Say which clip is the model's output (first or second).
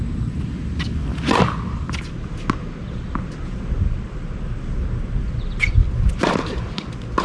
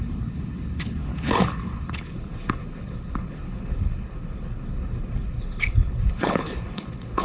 second